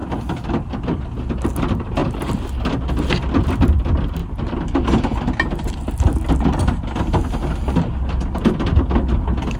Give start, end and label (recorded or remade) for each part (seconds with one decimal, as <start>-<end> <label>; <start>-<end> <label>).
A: 0.0-2.0 recorded; 2.0-3.1 remade; 3.1-9.6 recorded